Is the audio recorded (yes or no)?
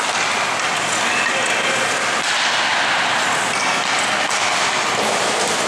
yes